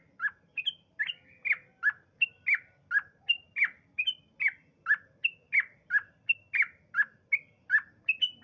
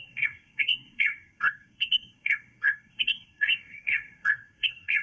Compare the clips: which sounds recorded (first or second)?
first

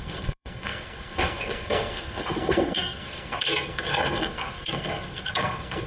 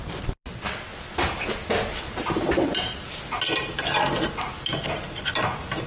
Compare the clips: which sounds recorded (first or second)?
second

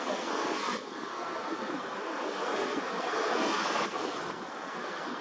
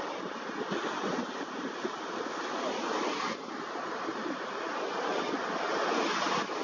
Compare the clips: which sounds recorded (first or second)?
second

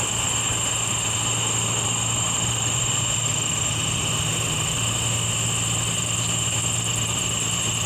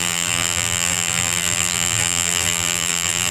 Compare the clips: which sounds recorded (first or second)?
first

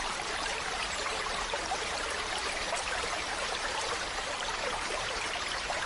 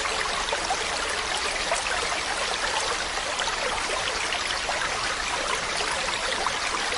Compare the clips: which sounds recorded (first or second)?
second